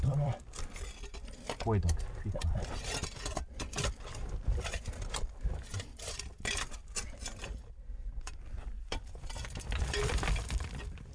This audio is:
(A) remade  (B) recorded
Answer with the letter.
A